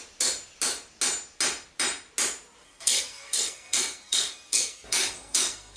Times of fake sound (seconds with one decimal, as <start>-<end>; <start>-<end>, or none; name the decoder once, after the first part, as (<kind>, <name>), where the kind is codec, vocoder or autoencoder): 2.6-5.8 (codec, SNAC)